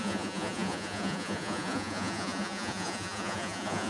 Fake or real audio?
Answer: fake